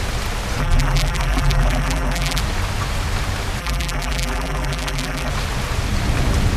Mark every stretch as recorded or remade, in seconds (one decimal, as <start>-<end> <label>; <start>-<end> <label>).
0.0-0.6 recorded; 0.6-2.4 remade; 2.4-3.6 recorded; 3.6-5.3 remade; 5.3-6.6 recorded